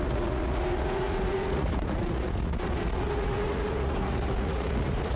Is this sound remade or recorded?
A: remade